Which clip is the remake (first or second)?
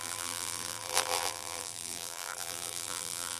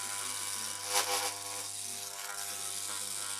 first